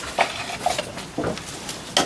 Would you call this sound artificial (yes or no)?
no